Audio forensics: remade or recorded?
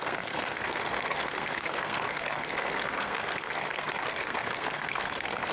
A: remade